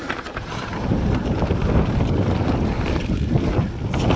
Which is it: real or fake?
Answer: real